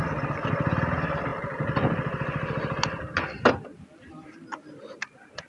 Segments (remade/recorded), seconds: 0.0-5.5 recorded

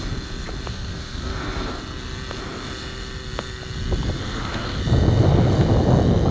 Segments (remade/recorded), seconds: 0.0-0.7 recorded; 0.7-1.8 remade; 1.8-4.2 recorded; 4.2-4.8 remade; 4.8-6.3 recorded

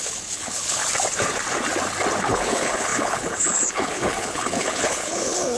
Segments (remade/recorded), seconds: 0.0-0.8 remade; 0.8-2.2 recorded; 2.2-5.6 remade